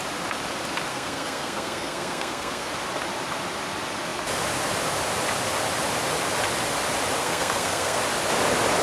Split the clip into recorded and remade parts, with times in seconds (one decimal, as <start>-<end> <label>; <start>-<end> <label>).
0.0-0.9 recorded; 0.9-2.7 remade; 2.7-7.2 recorded; 7.2-8.0 remade; 8.0-8.8 recorded